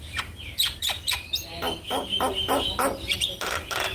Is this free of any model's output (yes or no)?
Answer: yes